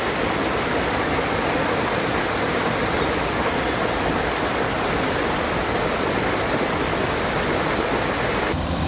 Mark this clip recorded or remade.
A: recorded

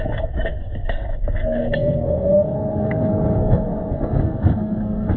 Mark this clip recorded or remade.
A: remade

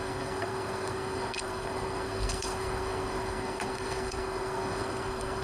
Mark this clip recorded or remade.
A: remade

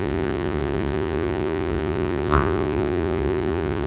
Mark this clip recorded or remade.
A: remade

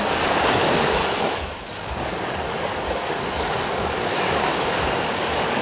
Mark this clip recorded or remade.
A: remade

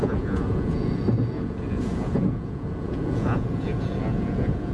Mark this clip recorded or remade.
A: remade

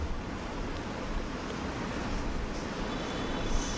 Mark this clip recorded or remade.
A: recorded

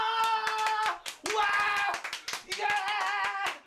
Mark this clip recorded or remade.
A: recorded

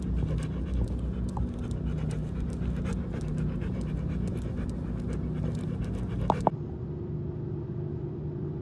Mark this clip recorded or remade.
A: recorded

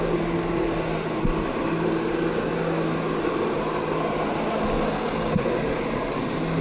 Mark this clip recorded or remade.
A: recorded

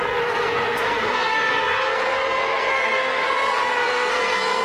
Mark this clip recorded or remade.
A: remade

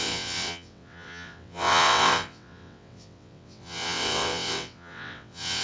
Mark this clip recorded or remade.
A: remade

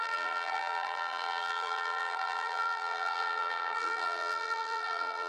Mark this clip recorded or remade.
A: remade